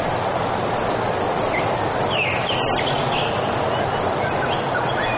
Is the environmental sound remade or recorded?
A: recorded